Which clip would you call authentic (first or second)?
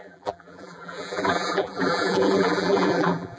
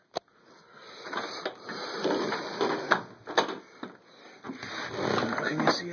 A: second